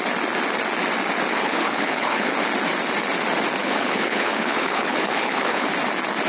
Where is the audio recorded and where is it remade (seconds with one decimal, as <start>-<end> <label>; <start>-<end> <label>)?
0.0-1.3 recorded; 1.3-2.3 remade; 2.3-3.6 recorded; 3.6-5.7 remade; 5.7-6.3 recorded